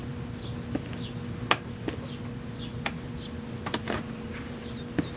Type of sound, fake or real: real